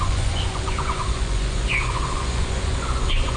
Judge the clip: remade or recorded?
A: remade